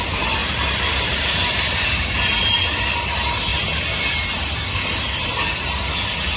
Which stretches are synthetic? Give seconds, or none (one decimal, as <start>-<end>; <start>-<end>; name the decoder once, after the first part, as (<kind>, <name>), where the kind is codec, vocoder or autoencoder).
0.4-1.8 (vocoder, BigVGAN v2)

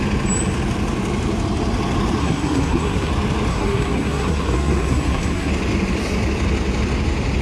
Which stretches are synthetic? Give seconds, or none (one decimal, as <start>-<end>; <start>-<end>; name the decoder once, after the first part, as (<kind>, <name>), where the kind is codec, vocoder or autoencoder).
2.2-3.1 (codec, SNAC); 3.5-5.5

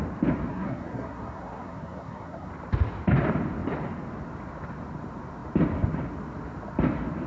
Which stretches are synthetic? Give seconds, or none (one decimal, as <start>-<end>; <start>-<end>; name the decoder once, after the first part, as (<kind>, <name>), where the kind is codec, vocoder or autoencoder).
0.5-2.5 (codec, SNAC)

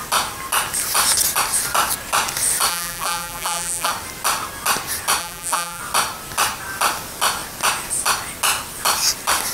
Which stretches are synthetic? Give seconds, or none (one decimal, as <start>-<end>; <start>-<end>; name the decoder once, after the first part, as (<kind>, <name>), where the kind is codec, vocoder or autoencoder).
2.7-3.9 (vocoder, BigVGAN v2); 5.2-5.8

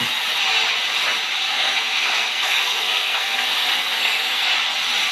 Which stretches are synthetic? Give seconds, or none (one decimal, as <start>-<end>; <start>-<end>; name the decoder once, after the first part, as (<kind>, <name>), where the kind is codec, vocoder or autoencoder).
1.4-4.5 (codec, SNAC)

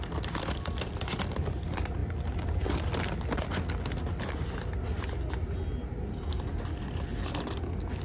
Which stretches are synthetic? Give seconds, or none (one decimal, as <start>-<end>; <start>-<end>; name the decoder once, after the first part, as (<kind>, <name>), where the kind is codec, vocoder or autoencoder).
none

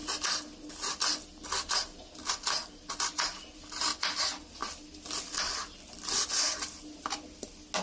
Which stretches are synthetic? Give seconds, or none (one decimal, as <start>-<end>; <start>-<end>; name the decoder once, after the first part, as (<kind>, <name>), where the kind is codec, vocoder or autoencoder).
none